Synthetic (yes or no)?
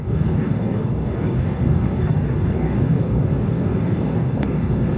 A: yes